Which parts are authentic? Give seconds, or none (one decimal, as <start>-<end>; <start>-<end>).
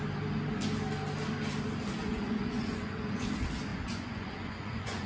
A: 0.0-2.0; 3.3-3.7